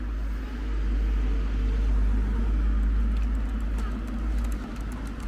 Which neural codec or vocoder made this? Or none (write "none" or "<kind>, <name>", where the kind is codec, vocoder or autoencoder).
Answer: none